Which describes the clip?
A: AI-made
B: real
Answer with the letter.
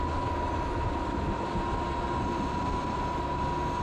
B